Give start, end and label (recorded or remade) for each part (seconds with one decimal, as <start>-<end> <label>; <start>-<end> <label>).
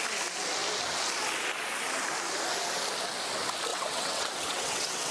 0.0-3.7 recorded; 3.7-5.1 remade